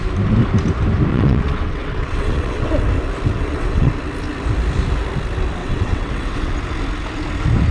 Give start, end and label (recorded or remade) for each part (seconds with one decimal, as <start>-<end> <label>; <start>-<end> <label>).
0.0-1.1 recorded; 1.1-2.7 remade; 2.7-3.3 recorded; 3.3-3.9 remade; 3.9-5.6 recorded; 5.6-6.5 remade; 6.5-7.7 recorded